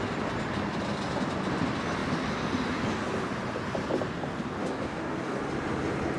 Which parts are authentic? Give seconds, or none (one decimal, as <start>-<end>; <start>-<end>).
0.0-4.6; 5.4-6.2